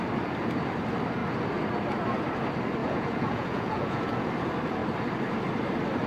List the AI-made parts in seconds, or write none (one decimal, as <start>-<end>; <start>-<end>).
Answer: 2.8-4.3